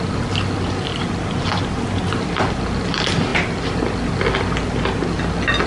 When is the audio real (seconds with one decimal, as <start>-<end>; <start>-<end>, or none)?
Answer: 0.0-5.7

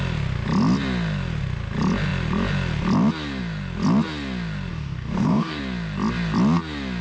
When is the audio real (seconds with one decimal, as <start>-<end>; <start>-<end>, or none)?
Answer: 0.0-4.7; 5.6-7.0

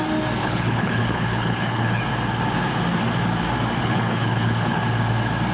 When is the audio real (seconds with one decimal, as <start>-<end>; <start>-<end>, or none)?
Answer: 0.0-0.4; 2.0-3.8; 4.8-5.5